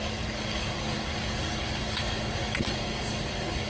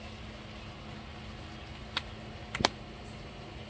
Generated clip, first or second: first